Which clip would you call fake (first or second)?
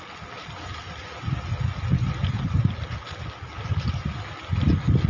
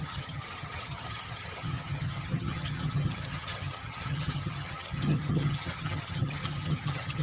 second